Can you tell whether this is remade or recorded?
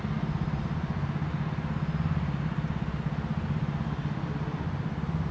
recorded